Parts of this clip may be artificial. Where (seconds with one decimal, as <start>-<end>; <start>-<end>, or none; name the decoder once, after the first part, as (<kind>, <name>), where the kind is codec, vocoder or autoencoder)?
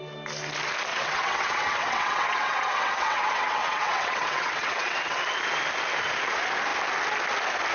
0.9-5.2 (vocoder, WaveNeXt)